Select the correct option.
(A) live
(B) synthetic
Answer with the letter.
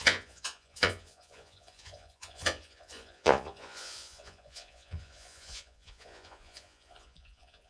B